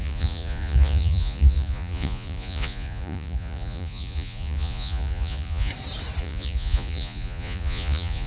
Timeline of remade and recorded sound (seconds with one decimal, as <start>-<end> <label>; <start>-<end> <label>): 0.0-5.7 remade; 5.7-6.2 recorded; 6.2-8.3 remade